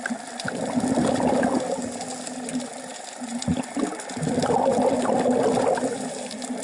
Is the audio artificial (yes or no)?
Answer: no